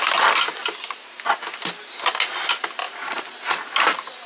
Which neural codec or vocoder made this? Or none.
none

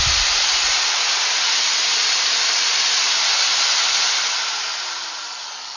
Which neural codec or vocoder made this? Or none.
none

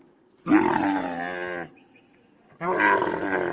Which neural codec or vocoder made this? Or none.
none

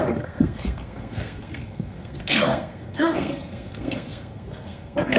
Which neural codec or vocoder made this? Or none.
codec, SNAC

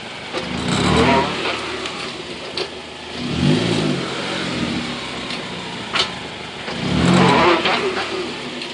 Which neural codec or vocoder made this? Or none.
none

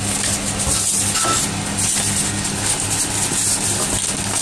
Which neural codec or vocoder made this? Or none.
none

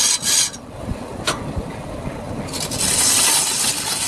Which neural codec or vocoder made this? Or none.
none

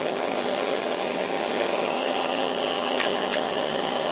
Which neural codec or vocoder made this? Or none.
vocoder, HiFi-GAN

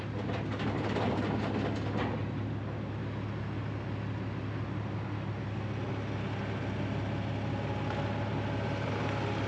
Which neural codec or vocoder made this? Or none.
none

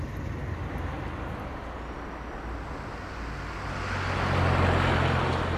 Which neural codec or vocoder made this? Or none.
none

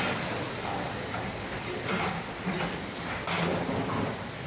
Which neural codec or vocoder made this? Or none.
none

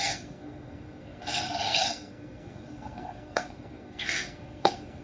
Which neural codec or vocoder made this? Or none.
codec, SNAC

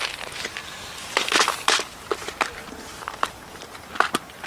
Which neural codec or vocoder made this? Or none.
none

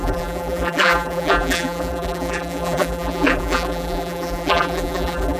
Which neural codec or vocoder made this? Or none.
vocoder, BigVGAN v2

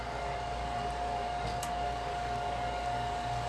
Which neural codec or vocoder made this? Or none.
codec, DAC